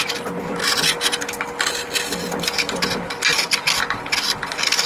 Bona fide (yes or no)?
yes